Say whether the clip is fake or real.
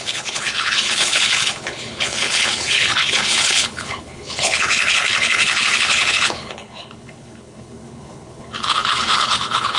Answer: fake